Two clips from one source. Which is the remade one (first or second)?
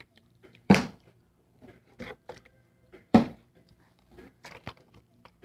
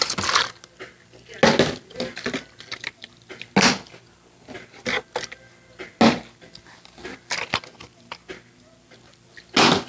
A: first